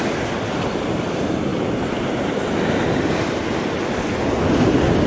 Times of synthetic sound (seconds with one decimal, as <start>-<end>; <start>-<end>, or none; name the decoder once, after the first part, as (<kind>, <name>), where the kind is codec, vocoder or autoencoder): none